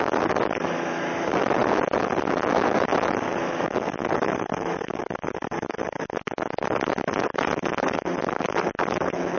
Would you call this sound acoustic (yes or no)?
no